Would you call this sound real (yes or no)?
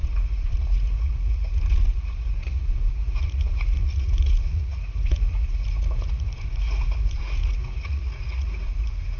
no